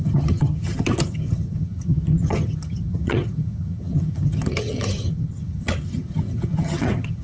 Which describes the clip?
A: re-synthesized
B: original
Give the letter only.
A